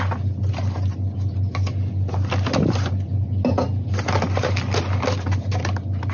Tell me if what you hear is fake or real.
real